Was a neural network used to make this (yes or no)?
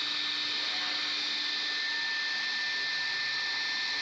no